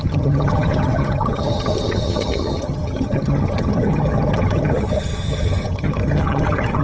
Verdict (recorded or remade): remade